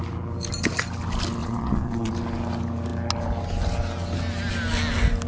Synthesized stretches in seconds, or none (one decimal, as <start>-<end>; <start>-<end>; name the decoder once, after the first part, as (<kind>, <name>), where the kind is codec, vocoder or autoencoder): 1.4-2.1 (vocoder, Vocos)